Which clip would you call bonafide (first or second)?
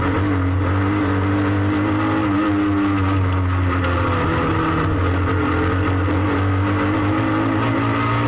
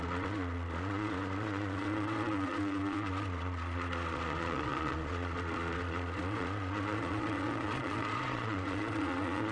first